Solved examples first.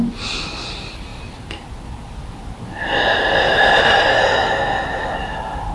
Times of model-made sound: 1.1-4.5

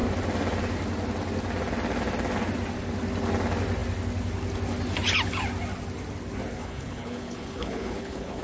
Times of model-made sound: 6.6-8.4

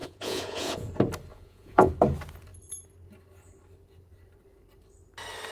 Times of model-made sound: 0.0-0.9; 1.3-1.9

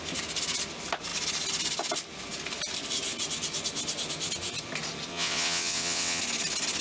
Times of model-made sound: 5.1-6.2

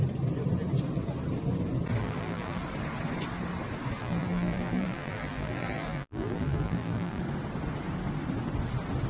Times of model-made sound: 2.0-2.6; 4.0-7.2

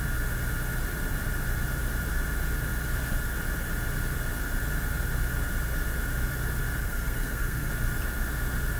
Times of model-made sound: 6.8-7.7